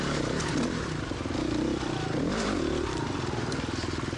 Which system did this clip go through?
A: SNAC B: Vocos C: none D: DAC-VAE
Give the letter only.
C